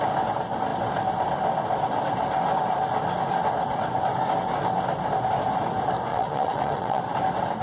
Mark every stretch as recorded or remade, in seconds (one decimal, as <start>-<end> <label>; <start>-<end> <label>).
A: 0.0-6.1 recorded; 6.1-7.0 remade; 7.0-7.6 recorded